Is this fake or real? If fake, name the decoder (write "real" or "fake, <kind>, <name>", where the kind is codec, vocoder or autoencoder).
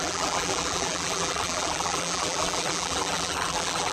fake, vocoder, BigVGAN v2